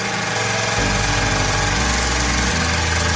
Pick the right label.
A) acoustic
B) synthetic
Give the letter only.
A